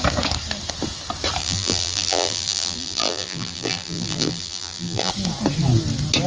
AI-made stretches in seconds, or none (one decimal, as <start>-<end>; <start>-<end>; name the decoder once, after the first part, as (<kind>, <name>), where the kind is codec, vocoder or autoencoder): 1.4-5.1 (vocoder, BigVGAN v2)